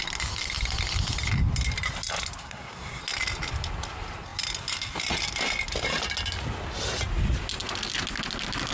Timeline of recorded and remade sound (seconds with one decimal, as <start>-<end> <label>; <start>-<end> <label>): 0.0-2.4 recorded; 2.4-3.0 remade; 3.0-8.7 recorded